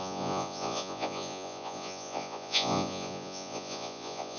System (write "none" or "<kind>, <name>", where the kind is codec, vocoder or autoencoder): vocoder, Vocos